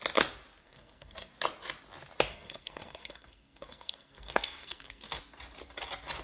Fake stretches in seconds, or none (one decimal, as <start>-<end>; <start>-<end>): 0.6-1.3; 2.3-5.2